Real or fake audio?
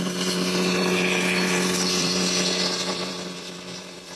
fake